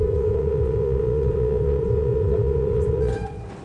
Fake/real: fake